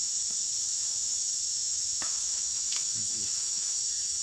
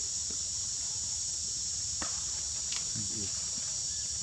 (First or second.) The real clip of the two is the second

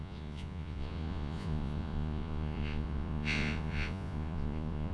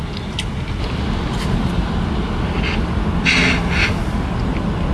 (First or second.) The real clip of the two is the second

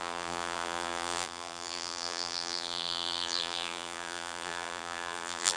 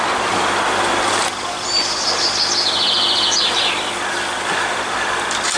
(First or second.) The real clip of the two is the second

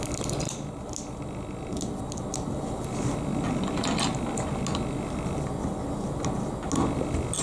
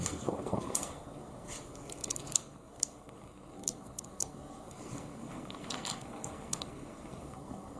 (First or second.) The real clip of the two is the first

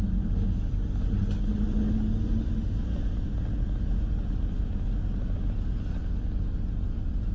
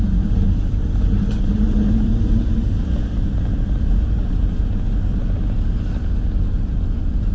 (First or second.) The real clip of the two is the first